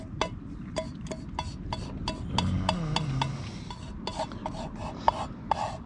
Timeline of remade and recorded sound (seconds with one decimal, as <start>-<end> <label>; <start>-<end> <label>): 0.0-5.9 recorded